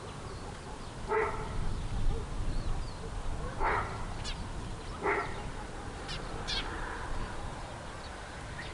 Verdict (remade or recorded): recorded